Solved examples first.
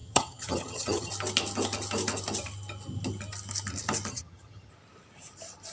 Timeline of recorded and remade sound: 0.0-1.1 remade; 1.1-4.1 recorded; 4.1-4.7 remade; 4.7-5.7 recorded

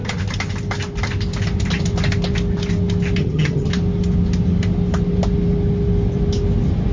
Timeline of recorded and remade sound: 0.0-3.2 recorded; 3.2-3.7 remade; 3.7-6.9 recorded

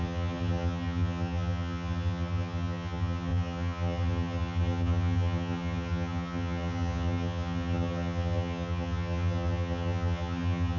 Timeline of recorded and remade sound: 0.0-10.8 remade

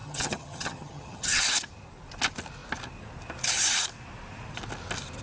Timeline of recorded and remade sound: 0.0-1.4 remade; 1.4-5.2 recorded

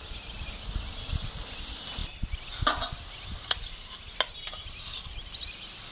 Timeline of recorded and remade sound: 0.0-5.9 recorded

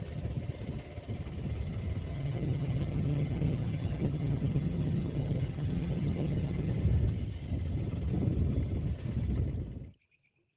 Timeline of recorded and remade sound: 0.0-2.1 recorded; 2.1-6.7 remade; 6.7-10.6 recorded

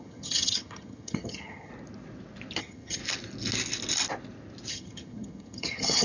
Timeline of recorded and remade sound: 0.0-1.7 remade; 1.7-2.6 recorded; 2.6-3.0 remade; 3.0-4.7 recorded; 4.7-6.0 remade

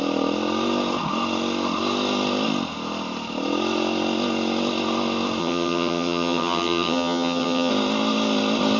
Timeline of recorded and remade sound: 0.0-5.4 recorded; 5.4-7.7 remade; 7.7-8.8 recorded